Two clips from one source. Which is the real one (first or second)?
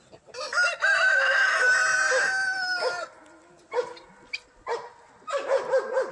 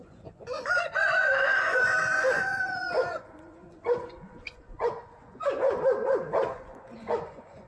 first